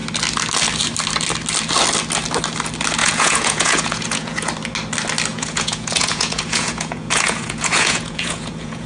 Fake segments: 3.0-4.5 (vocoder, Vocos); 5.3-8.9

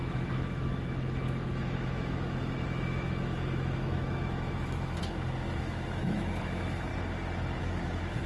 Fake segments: 0.0-6.9 (autoencoder, DAC-VAE); 7.6-8.3

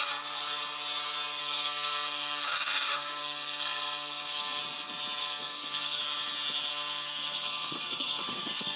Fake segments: 1.4-4.6 (codec, SNAC); 5.2-6.0; 6.7-8.8